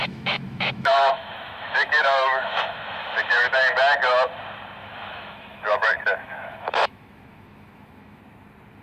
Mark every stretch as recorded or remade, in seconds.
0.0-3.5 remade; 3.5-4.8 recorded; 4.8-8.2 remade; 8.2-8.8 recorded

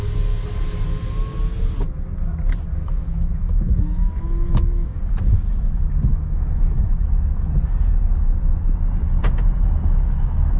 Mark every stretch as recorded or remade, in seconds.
0.0-3.0 recorded; 3.0-5.0 remade; 5.0-6.1 recorded; 6.1-6.6 remade; 6.6-10.6 recorded

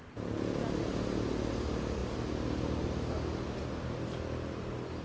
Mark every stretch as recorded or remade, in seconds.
0.0-5.0 recorded

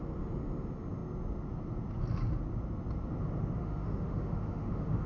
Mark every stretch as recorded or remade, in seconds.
0.0-3.6 recorded; 3.6-5.1 remade

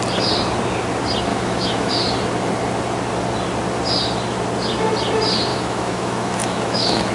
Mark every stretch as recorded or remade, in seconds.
0.0-1.3 recorded; 1.3-1.9 remade; 1.9-5.5 recorded; 5.5-7.1 remade